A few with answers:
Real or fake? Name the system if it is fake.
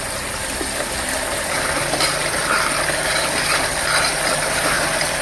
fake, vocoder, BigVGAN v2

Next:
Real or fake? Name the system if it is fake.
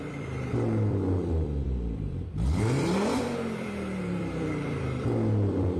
fake, vocoder, BigVGAN v2